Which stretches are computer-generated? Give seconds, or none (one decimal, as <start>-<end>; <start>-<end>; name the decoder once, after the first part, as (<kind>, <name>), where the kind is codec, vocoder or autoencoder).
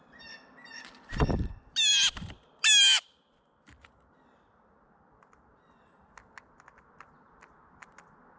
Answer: none